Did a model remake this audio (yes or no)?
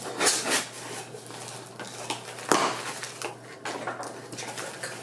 no